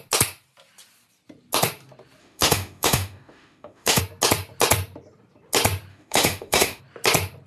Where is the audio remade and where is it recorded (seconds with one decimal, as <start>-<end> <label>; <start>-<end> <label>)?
0.0-2.2 recorded; 2.2-4.0 remade; 4.0-5.9 recorded; 5.9-6.8 remade; 6.8-7.5 recorded